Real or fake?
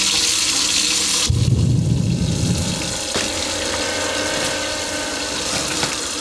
real